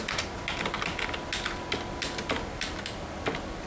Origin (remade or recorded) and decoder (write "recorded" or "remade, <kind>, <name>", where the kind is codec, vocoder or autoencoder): recorded